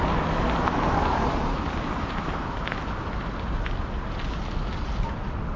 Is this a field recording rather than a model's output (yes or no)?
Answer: yes